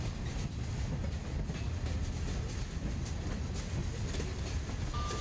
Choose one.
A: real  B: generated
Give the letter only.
A